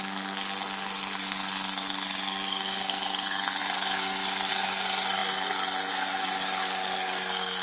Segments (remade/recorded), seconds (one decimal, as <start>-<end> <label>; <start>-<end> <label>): 0.0-7.6 remade